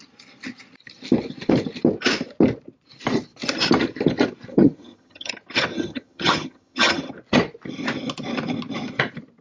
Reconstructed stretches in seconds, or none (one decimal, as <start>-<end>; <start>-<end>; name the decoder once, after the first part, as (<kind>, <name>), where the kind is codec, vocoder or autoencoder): 4.5-5.3 (vocoder, HiFi-GAN); 5.7-7.0